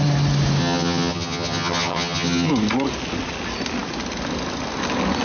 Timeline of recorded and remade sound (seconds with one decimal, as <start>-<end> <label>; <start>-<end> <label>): 0.0-0.6 recorded; 0.6-2.5 remade; 2.5-5.2 recorded